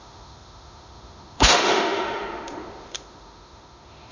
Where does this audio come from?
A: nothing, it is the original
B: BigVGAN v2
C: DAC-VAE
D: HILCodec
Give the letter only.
C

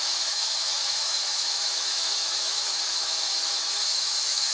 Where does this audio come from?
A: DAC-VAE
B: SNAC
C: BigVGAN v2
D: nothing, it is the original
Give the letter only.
A